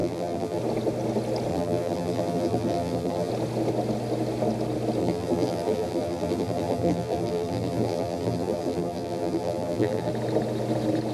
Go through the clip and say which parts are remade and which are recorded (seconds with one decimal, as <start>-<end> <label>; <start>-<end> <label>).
0.0-0.6 remade; 0.6-1.5 recorded; 1.5-3.3 remade; 3.3-5.0 recorded; 5.0-10.1 remade; 10.1-11.1 recorded